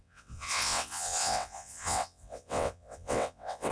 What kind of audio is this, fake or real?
fake